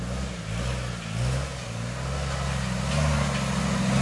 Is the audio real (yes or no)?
yes